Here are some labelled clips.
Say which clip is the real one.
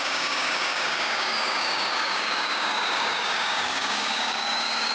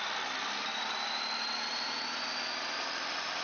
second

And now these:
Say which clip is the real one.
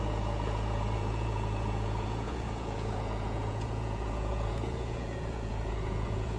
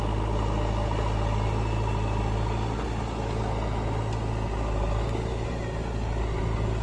second